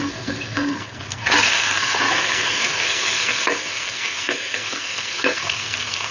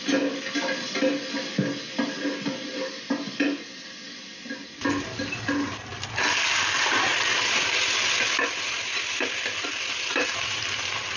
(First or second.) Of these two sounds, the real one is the second